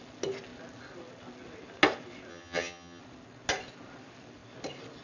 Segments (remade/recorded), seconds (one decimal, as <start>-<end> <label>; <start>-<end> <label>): 0.0-2.3 recorded; 2.3-3.0 remade; 3.0-5.0 recorded